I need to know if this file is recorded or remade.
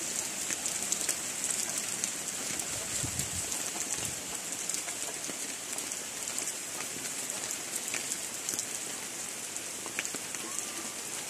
recorded